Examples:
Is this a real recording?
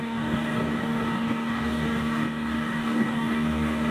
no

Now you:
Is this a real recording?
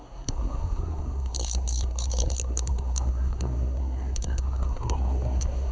no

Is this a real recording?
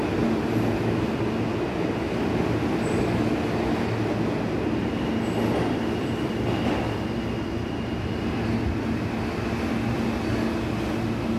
yes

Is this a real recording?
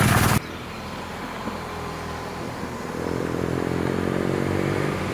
no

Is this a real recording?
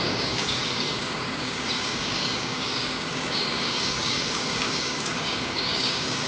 no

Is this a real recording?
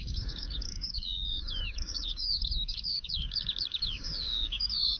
no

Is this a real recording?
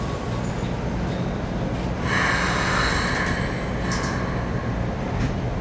yes